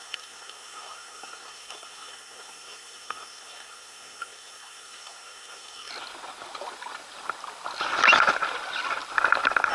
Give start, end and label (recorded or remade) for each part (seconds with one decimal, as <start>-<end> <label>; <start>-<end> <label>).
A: 0.0-5.9 remade; 5.9-9.7 recorded